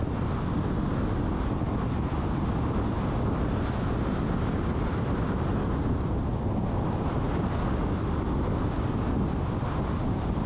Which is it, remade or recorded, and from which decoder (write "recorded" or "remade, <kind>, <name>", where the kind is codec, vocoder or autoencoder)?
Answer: recorded